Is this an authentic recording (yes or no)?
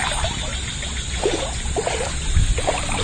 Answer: yes